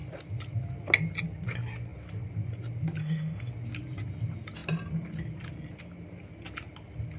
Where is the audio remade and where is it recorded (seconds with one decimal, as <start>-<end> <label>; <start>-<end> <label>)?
0.0-3.0 recorded; 3.0-3.5 remade; 3.5-7.2 recorded

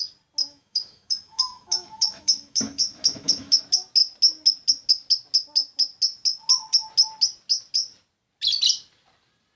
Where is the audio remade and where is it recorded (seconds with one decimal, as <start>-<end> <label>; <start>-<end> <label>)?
0.0-0.4 recorded; 0.4-3.6 remade; 3.6-9.6 recorded